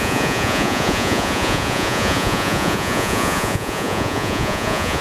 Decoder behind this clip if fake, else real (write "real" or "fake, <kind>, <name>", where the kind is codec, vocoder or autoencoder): fake, vocoder, Vocos